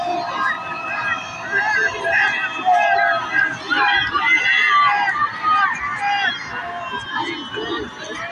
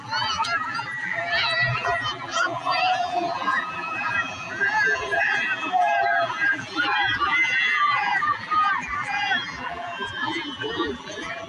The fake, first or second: second